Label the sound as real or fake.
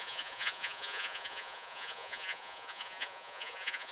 fake